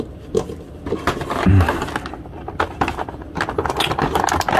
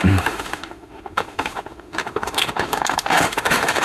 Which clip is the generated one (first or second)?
second